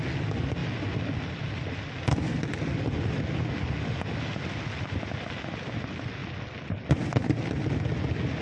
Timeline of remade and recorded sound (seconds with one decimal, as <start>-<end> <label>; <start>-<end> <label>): 0.0-8.4 recorded